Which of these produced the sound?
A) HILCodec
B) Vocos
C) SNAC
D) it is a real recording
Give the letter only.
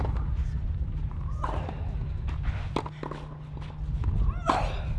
D